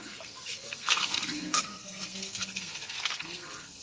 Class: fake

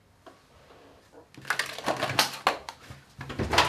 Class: real